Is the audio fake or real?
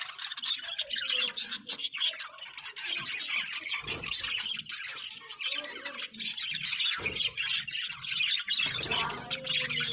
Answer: real